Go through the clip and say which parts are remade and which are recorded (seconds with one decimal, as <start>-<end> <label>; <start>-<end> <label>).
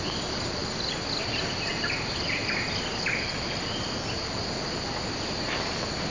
0.0-6.1 recorded